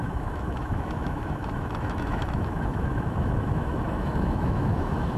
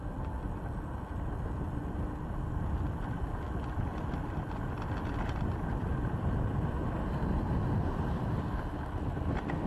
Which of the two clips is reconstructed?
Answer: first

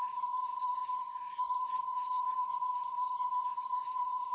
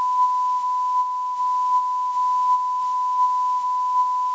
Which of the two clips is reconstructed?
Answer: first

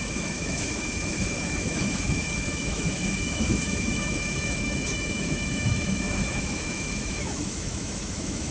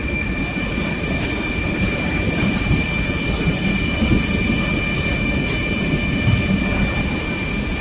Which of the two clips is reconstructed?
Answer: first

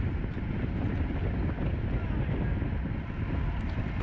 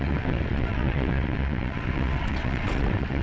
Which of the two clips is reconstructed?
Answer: second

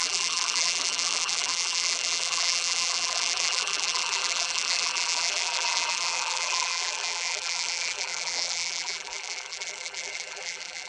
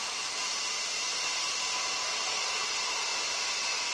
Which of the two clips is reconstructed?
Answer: first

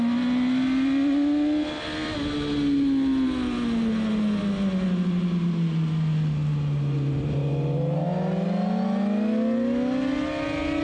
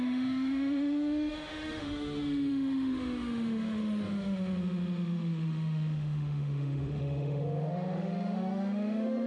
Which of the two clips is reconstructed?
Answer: second